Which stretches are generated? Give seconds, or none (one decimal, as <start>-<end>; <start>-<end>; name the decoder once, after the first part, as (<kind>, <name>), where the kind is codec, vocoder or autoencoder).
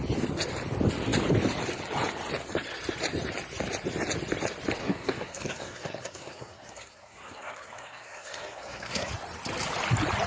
4.8-9.1 (codec, SNAC)